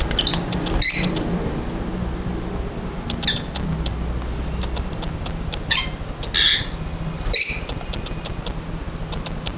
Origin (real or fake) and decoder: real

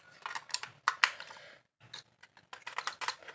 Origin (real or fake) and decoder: real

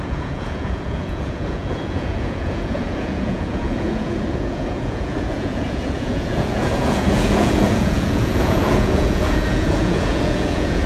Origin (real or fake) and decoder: fake, vocoder, Vocos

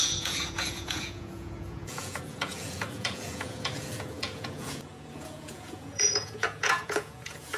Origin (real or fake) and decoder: fake, vocoder, Vocos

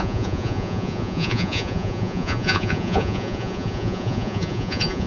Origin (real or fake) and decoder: fake, vocoder, Vocos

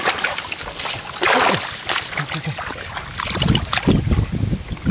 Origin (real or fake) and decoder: real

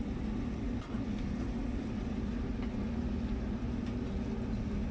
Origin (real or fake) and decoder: real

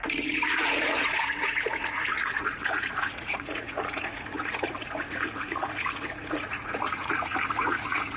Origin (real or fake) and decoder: fake, vocoder, Vocos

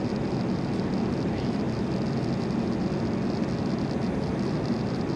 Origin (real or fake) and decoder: real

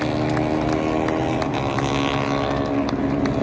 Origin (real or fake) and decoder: real